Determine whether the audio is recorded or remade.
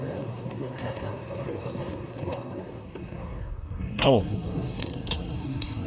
remade